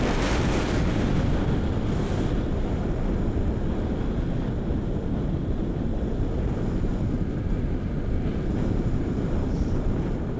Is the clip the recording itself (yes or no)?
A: yes